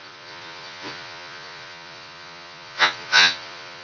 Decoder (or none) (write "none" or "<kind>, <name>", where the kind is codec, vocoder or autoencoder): vocoder, Vocos